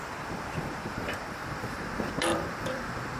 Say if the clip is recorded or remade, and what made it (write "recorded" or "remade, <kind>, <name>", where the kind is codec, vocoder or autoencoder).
remade, vocoder, BigVGAN v2